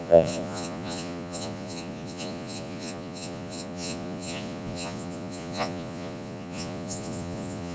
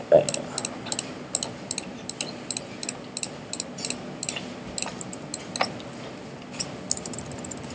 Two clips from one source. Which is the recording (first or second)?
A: second